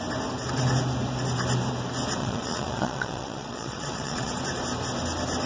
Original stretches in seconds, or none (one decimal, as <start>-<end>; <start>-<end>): 0.0-2.2; 4.3-5.5